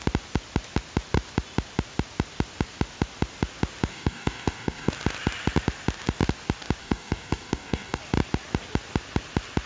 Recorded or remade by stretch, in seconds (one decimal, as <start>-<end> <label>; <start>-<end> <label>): 0.0-3.9 recorded; 3.9-4.9 remade; 4.9-6.8 recorded; 6.8-8.0 remade; 8.0-9.7 recorded